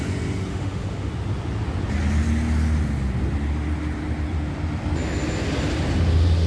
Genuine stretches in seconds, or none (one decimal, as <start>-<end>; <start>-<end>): 0.0-0.5; 1.1-6.5